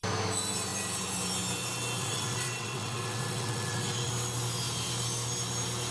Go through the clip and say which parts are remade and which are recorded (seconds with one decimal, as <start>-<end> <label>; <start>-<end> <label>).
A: 0.0-2.0 recorded; 2.0-4.1 remade; 4.1-5.9 recorded